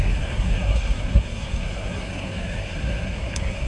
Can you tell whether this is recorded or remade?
remade